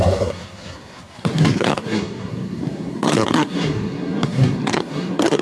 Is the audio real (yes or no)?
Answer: no